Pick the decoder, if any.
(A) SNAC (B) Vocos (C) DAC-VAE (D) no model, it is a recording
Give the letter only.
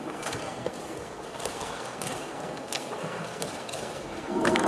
A